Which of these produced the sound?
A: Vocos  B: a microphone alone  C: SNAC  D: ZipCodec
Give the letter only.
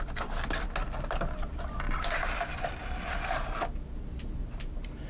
B